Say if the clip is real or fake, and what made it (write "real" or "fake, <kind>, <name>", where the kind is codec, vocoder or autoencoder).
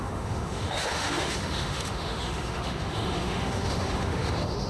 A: fake, autoencoder, DAC-VAE